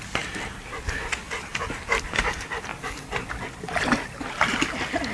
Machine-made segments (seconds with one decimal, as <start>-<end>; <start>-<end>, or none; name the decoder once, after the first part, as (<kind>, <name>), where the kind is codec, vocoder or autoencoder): none